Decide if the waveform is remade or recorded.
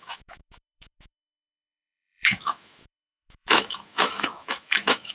remade